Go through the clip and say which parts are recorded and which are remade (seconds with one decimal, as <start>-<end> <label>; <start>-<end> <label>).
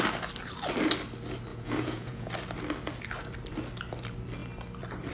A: 0.0-1.5 recorded; 1.5-2.3 remade; 2.3-5.1 recorded